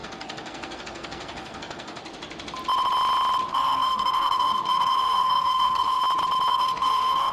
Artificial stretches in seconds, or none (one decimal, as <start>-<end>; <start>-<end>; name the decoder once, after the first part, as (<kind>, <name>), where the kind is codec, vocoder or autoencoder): 0.0-2.0 (codec, SNAC); 3.5-6.0; 6.5-7.3